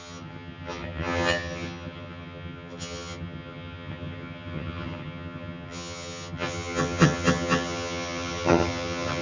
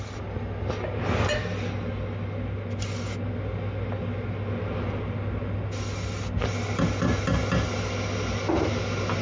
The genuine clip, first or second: second